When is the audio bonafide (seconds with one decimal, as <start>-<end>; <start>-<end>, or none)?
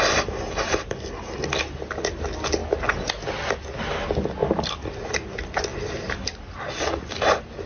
0.0-7.7